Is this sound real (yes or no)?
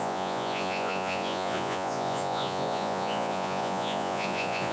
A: no